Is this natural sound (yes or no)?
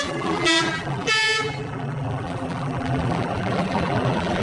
no